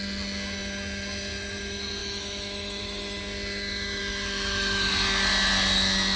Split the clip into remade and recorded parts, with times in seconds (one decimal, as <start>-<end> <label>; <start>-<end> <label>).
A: 0.0-2.0 recorded; 2.0-3.2 remade; 3.2-4.0 recorded; 4.0-4.9 remade; 4.9-6.2 recorded